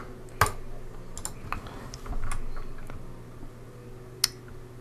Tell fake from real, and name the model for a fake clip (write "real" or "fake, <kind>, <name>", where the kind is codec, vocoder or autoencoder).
real